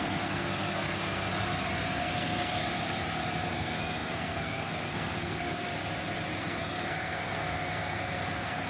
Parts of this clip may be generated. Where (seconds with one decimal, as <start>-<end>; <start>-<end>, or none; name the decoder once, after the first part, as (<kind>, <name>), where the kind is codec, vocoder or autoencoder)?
0.0-1.3 (codec, SNAC); 2.0-2.6; 3.5-5.7; 6.4-8.7